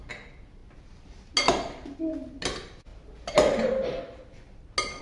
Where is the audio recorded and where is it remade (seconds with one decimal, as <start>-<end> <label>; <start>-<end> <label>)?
0.0-5.0 recorded